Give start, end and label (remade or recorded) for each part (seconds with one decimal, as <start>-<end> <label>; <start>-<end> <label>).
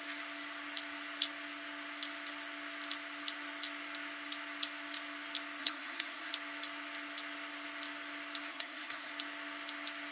0.0-5.6 recorded; 5.6-6.3 remade; 6.3-8.5 recorded; 8.5-9.1 remade; 9.1-10.1 recorded